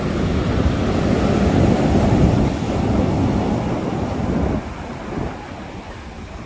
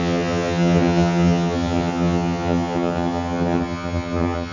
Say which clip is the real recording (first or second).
first